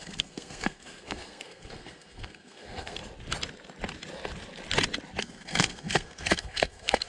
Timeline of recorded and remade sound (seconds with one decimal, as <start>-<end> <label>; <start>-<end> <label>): 0.0-3.0 remade; 3.0-5.2 recorded; 5.2-7.1 remade